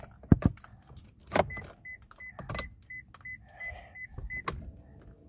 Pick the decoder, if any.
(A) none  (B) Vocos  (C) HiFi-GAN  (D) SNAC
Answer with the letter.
A